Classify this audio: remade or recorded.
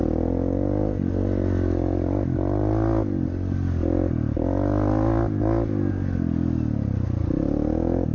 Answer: recorded